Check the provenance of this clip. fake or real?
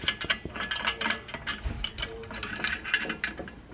real